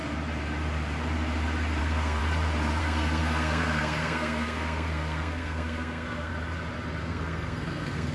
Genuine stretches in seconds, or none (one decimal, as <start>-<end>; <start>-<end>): 0.0-1.8; 2.2-2.8; 6.3-7.0